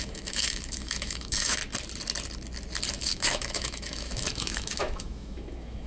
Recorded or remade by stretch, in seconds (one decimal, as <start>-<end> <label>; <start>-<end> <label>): 0.0-1.6 remade; 1.6-2.9 recorded; 2.9-5.9 remade